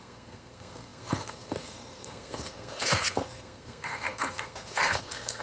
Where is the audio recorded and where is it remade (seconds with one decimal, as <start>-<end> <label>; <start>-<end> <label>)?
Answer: 0.0-5.4 remade